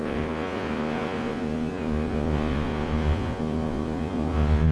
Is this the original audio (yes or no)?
no